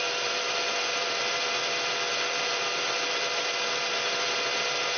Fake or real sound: fake